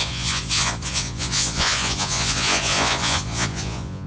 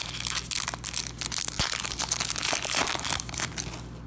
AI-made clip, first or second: first